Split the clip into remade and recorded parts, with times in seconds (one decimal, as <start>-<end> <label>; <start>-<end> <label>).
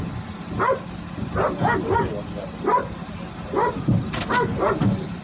0.0-5.2 recorded